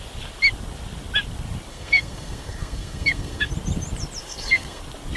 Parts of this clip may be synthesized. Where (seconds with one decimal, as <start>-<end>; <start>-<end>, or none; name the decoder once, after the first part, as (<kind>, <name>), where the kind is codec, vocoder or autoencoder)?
1.7-3.5 (codec, SNAC); 4.2-4.8